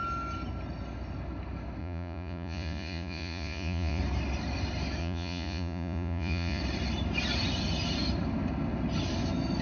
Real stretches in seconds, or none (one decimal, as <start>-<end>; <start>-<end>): 0.0-1.8; 4.0-5.0; 6.6-9.6